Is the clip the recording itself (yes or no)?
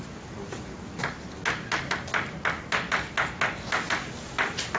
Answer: yes